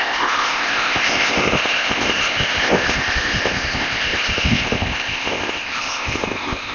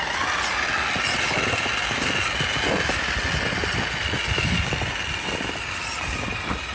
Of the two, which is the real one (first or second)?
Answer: second